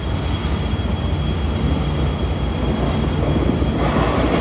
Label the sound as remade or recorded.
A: recorded